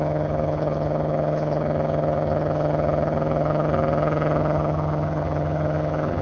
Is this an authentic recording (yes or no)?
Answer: no